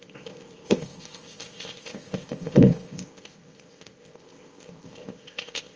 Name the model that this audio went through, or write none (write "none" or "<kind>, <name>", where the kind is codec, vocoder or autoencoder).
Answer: codec, ZipCodec